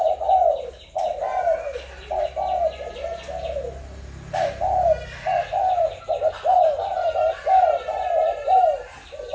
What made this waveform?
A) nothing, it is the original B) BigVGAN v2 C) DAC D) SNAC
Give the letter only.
A